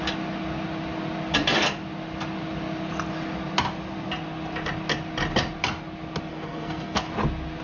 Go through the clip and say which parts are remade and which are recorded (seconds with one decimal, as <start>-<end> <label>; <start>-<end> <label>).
0.0-6.3 recorded; 6.3-7.0 remade; 7.0-7.6 recorded